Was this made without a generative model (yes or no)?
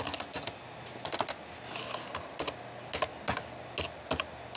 yes